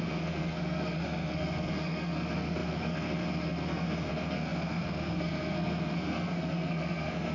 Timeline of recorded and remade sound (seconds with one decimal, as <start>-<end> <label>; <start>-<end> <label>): 0.0-7.3 remade